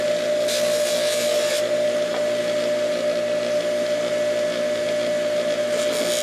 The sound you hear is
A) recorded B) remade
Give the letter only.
A